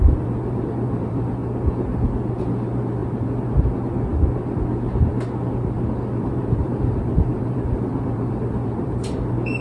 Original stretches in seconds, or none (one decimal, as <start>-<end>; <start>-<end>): 1.4-2.4; 3.0-6.2